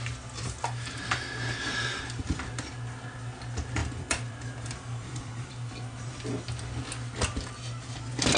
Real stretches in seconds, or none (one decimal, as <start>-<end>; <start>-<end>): 0.0-3.8; 5.7-8.4